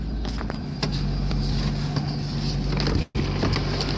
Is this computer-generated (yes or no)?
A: no